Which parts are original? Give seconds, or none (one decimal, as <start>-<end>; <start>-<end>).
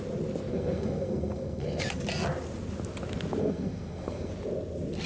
0.0-0.5; 1.8-3.4; 4.3-5.1